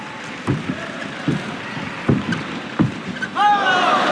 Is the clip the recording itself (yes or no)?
yes